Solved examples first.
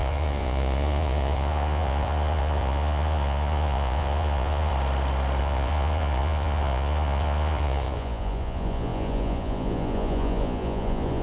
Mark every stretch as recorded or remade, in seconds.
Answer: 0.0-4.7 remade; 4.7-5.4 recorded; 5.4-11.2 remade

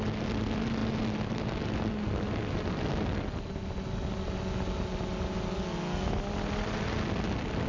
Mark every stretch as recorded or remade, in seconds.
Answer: 0.0-7.7 recorded

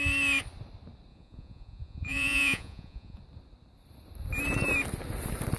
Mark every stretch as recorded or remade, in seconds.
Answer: 0.0-1.1 recorded; 1.1-3.2 remade; 3.2-5.6 recorded

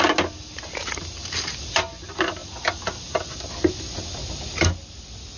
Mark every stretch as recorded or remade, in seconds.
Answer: 0.0-5.4 recorded

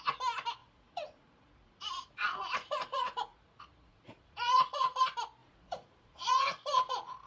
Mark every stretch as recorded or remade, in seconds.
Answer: 0.0-0.6 recorded; 0.6-5.0 remade; 5.0-5.4 recorded; 5.4-7.3 remade